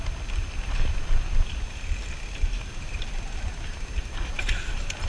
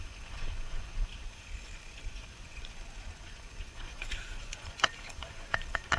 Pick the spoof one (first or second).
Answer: second